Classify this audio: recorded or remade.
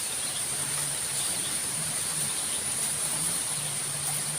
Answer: remade